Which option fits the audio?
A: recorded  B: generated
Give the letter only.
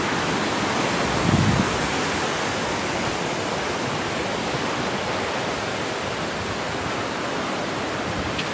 A